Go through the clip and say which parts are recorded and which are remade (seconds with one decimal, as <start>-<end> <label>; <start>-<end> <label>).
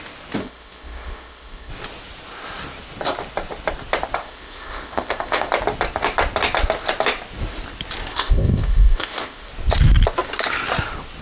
0.0-0.4 recorded; 0.4-1.7 remade; 1.7-4.2 recorded; 4.2-5.5 remade; 5.5-8.1 recorded; 8.1-9.5 remade; 9.5-11.2 recorded